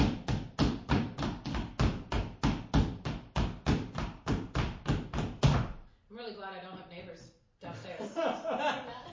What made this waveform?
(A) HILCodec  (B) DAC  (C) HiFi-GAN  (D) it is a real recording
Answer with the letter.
D